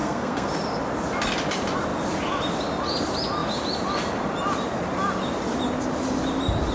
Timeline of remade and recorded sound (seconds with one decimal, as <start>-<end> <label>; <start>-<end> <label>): 0.0-0.5 remade; 0.5-6.7 recorded